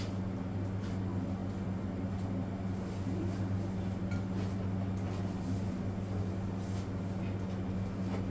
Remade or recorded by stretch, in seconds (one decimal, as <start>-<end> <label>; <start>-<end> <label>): 0.0-8.3 recorded